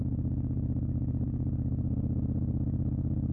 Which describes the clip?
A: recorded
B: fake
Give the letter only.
B